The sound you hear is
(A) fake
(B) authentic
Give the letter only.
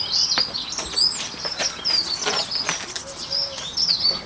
B